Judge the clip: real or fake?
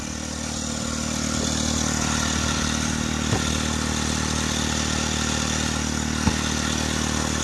real